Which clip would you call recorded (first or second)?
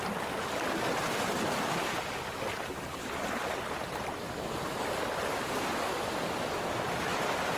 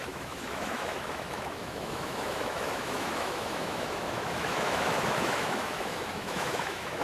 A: first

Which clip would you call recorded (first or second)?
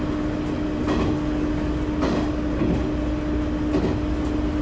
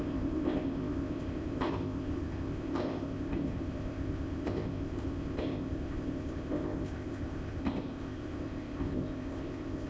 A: first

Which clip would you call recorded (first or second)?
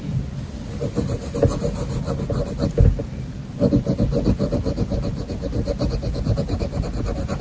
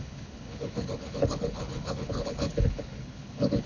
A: first